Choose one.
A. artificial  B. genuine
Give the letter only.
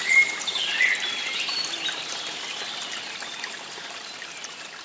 B